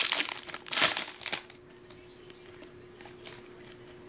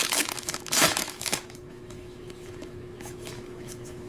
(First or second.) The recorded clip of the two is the first